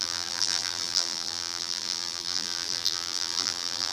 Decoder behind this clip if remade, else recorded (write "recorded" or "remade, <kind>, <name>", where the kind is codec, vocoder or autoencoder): remade, vocoder, BigVGAN v2